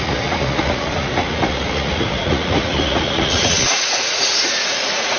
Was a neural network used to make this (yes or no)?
yes